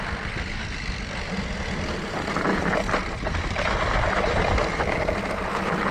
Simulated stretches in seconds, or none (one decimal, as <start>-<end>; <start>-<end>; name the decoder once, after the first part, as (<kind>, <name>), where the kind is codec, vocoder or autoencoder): none